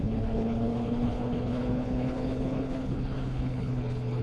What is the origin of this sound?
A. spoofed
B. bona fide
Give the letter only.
A